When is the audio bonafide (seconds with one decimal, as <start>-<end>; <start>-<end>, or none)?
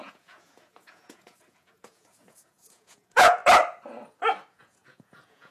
3.4-4.5